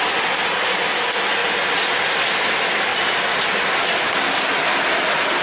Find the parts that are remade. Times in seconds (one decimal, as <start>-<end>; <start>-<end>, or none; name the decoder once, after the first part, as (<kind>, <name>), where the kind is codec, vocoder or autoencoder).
2.9-3.8 (vocoder, BigVGAN v2)